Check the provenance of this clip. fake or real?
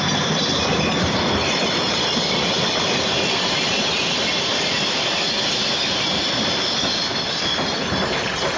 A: real